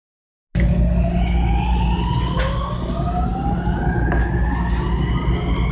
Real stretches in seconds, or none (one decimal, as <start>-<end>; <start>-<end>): 0.0-5.7